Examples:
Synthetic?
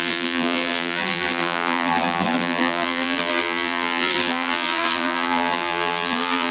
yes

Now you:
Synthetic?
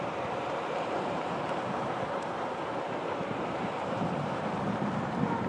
yes